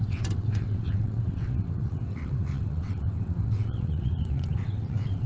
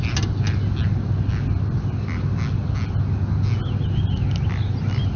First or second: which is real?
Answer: second